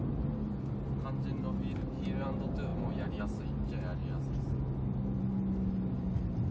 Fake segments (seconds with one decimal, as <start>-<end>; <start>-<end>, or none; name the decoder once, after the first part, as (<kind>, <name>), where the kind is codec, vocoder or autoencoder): none